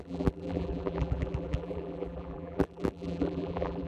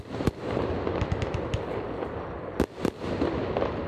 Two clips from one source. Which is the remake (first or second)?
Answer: first